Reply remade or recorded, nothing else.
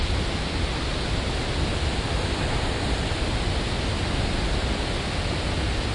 recorded